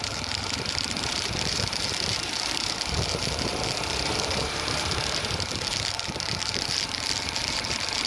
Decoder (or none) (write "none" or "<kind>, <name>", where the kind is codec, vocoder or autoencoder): vocoder, BigVGAN v2